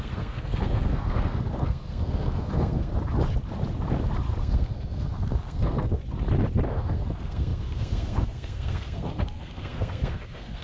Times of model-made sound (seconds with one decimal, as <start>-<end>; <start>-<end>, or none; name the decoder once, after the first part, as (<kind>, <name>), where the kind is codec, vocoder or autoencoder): 0.0-2.9 (codec, SNAC); 4.4-6.0; 6.7-10.6